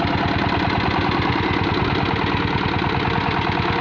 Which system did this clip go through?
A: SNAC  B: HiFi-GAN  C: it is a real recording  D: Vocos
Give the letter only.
C